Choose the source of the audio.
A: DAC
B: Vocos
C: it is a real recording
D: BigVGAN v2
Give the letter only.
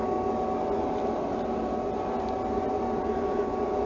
C